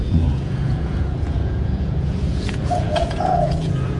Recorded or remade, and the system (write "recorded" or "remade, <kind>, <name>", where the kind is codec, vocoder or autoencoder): remade, vocoder, Vocos